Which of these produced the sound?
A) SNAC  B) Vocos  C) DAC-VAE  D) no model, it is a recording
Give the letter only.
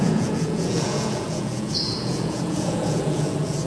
B